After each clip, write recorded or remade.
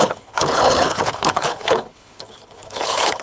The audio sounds remade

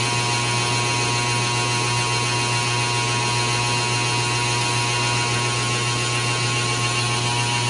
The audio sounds recorded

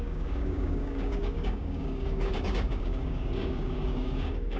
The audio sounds remade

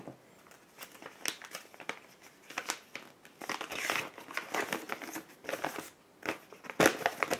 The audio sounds recorded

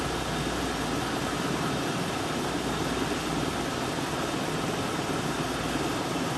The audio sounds recorded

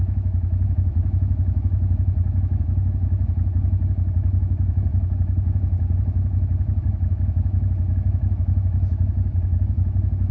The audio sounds remade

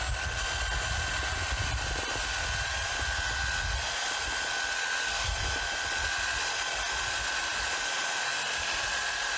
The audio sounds recorded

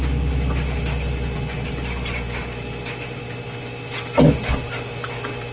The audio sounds recorded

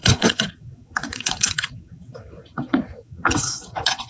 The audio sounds remade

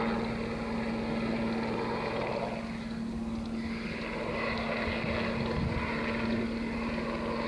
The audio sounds recorded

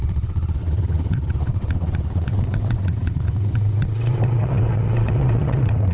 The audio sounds remade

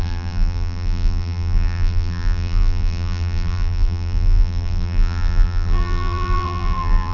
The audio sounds remade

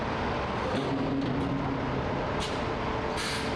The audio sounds recorded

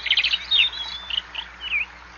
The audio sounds recorded